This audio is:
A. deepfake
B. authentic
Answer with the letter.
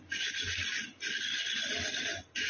B